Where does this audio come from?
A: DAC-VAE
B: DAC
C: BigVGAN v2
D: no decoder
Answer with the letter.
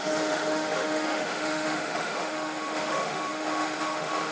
A